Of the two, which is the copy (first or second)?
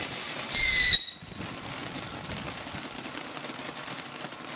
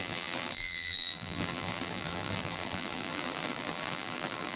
second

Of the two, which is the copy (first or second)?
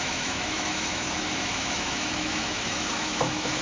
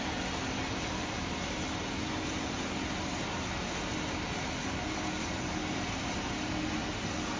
first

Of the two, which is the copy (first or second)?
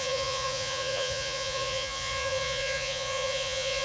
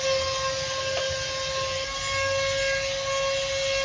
first